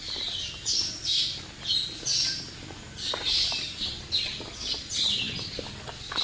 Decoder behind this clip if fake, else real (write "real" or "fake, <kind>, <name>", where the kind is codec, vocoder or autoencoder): real